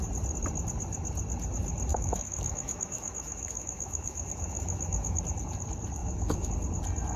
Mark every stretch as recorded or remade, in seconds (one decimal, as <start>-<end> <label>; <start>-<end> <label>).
0.0-1.9 recorded; 1.9-5.2 remade; 5.2-6.0 recorded; 6.0-6.5 remade; 6.5-7.2 recorded